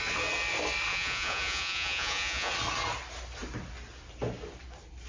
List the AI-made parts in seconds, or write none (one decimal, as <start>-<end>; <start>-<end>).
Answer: 0.9-2.5